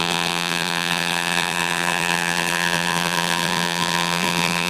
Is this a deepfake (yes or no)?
yes